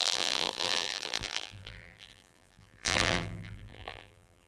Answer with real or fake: fake